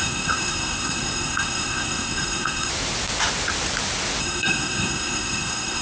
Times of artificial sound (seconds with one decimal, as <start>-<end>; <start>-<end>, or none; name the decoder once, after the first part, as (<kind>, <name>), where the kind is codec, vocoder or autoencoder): 0.0-2.7 (codec, SNAC); 4.2-5.8